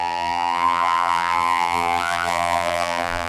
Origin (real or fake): fake